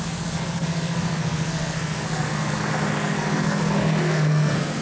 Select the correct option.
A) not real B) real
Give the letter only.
A